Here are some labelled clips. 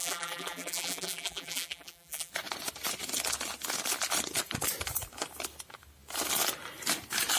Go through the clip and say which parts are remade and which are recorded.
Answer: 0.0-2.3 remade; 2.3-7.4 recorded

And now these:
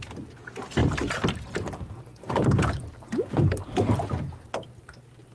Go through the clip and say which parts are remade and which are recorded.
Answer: 0.0-0.8 recorded; 0.8-3.9 remade; 3.9-5.3 recorded